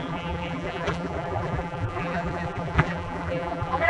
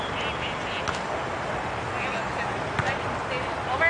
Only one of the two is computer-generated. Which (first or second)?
first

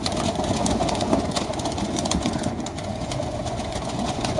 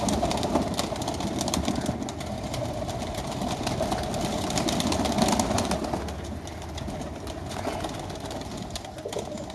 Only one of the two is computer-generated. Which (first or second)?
first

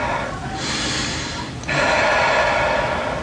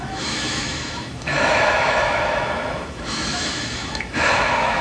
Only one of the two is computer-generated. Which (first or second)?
second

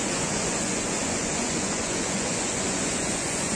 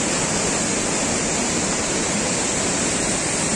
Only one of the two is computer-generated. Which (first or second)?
first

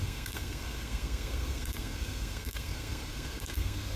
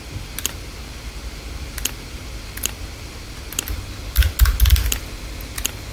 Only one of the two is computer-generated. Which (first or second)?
first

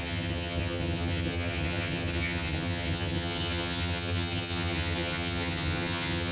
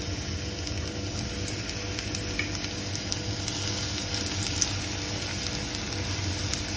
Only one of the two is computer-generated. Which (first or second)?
first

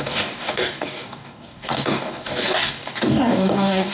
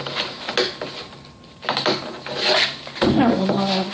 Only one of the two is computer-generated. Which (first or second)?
first